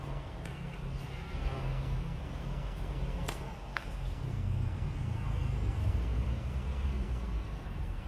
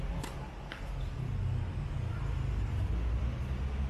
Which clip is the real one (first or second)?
second